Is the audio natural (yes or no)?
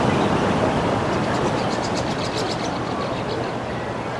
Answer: yes